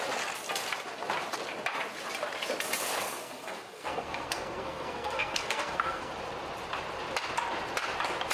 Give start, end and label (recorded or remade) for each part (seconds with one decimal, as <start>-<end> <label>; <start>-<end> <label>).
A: 0.0-3.0 recorded; 3.0-6.1 remade; 6.1-8.3 recorded